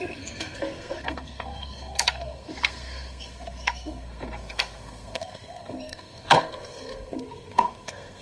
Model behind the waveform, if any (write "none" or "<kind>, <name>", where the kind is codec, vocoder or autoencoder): codec, SNAC